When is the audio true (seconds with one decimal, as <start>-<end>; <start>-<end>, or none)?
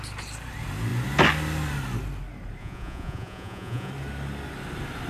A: 0.0-2.6; 3.9-5.1